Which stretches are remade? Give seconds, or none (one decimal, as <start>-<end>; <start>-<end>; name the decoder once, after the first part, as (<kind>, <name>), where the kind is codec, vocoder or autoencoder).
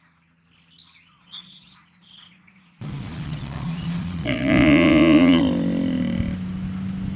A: 1.1-5.4 (vocoder, Vocos)